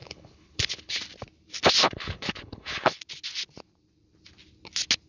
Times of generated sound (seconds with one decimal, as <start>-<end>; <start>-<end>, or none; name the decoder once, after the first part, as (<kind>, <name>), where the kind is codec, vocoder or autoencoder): 0.0-1.0 (codec, HILCodec); 1.8-3.0